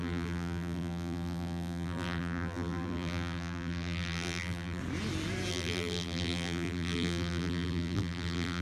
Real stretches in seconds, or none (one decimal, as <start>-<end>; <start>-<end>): 4.8-5.5